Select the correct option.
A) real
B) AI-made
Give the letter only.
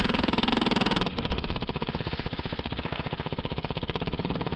B